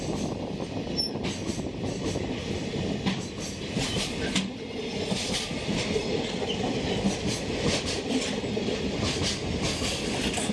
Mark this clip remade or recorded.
recorded